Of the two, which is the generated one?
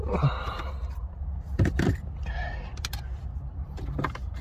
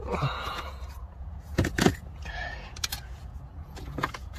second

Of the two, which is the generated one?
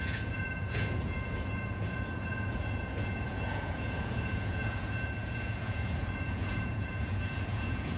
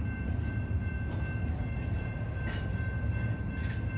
first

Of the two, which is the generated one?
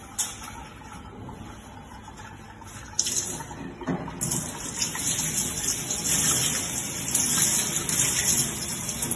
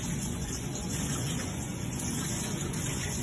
second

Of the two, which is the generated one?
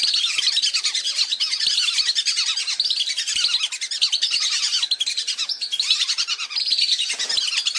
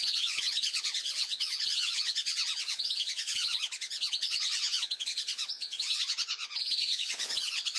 second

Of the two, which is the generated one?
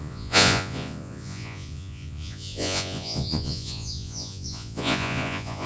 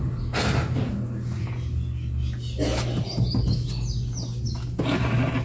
first